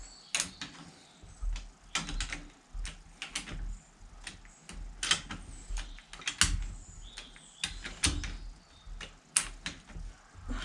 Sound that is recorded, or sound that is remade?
recorded